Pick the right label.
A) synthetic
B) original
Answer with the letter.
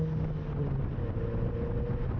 B